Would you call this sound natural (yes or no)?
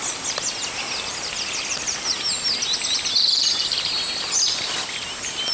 yes